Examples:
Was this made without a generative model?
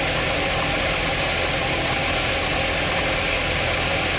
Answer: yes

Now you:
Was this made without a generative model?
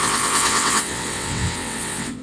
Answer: no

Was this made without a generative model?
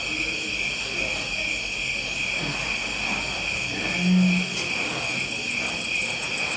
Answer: yes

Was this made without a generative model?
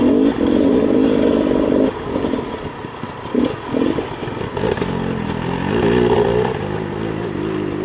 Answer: yes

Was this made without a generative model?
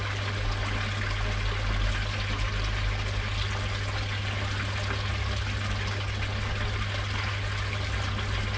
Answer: yes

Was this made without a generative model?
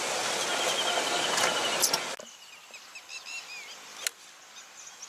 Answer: yes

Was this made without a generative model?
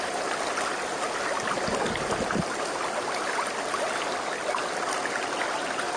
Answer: yes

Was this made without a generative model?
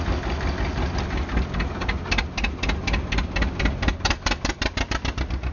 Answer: yes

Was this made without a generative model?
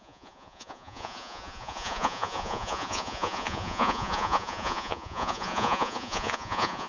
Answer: no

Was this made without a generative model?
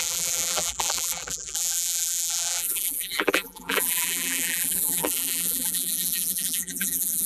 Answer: no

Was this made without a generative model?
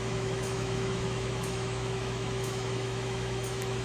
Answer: no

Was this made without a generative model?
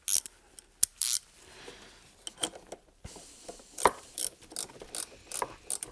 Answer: yes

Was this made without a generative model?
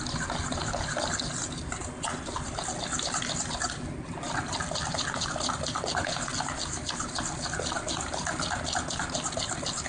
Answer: yes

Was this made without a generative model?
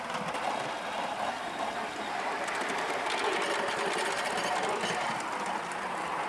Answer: yes